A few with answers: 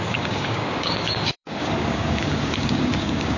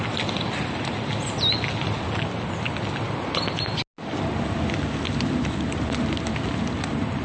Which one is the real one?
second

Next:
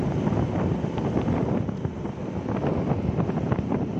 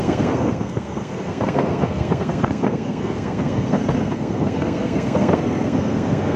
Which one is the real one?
first